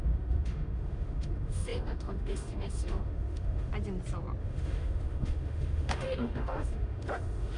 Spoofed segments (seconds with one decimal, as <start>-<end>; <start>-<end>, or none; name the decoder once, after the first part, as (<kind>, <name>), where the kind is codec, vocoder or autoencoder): 0.0-3.7 (autoencoder, DAC-VAE); 4.4-7.6